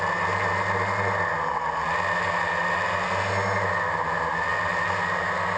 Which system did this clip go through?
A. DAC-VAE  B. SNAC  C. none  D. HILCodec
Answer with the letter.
C